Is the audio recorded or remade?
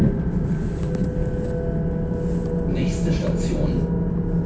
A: recorded